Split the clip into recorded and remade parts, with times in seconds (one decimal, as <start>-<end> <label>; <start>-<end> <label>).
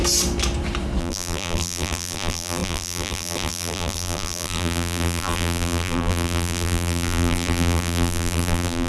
0.0-1.0 recorded; 1.0-8.9 remade